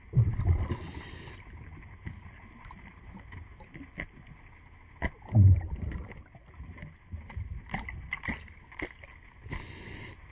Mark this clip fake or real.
real